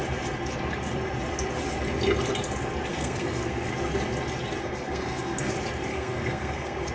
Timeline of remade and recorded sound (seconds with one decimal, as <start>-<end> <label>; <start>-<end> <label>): 0.0-2.9 recorded; 2.9-3.7 remade; 3.7-4.6 recorded; 4.6-5.5 remade; 5.5-5.9 recorded; 5.9-6.9 remade

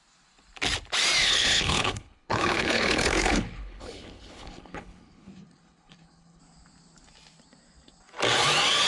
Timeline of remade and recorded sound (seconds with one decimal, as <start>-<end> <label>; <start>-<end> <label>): 0.0-1.2 recorded; 1.2-6.4 remade; 6.4-8.9 recorded

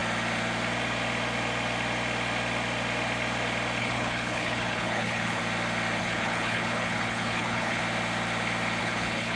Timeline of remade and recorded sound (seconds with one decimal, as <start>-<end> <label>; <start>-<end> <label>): 0.0-3.8 recorded; 3.8-5.4 remade; 5.4-6.0 recorded; 6.0-7.8 remade; 7.8-8.8 recorded; 8.8-9.4 remade

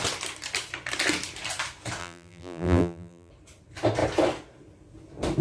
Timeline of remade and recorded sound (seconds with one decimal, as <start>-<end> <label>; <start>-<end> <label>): 0.0-2.0 recorded; 2.0-3.3 remade; 3.3-5.4 recorded